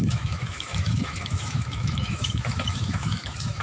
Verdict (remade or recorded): remade